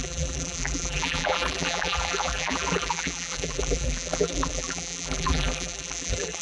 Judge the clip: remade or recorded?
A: remade